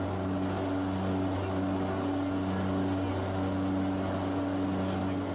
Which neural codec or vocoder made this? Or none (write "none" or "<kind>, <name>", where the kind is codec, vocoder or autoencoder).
none